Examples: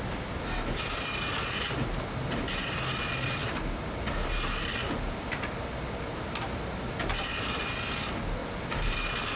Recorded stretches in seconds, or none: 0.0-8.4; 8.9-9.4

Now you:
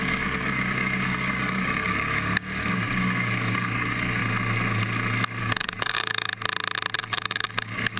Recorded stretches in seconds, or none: 4.2-5.4; 6.3-7.0

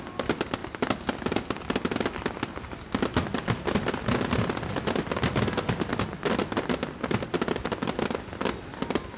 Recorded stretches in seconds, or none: 0.0-9.2

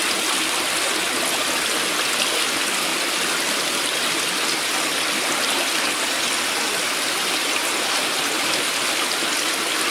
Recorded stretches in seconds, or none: 0.0-9.9

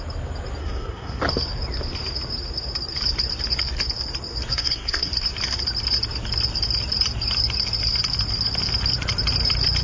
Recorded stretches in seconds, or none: 0.0-0.6; 1.2-4.5; 5.1-9.8

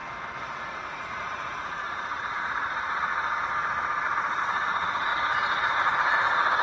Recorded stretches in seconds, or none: 0.0-0.8; 3.1-4.4; 5.1-5.8

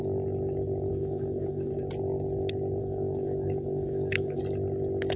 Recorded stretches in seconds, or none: 0.0-0.9; 1.7-2.8; 4.4-5.2

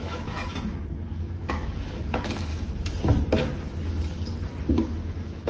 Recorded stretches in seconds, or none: 2.5-4.7